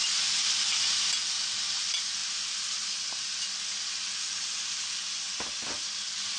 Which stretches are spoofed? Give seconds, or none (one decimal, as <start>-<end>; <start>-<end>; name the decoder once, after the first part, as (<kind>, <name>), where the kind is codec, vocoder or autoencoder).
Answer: none